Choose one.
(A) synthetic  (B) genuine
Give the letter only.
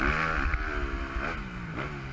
B